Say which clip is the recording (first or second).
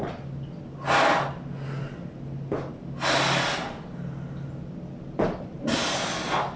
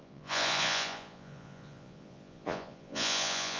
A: first